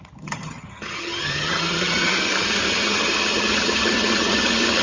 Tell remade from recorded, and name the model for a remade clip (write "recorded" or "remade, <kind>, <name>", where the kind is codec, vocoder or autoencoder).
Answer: remade, vocoder, HiFi-GAN